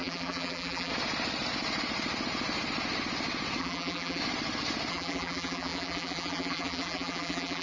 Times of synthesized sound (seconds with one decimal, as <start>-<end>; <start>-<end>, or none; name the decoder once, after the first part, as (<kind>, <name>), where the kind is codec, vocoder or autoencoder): 0.0-0.9 (vocoder, BigVGAN v2); 3.6-4.2; 4.9-7.6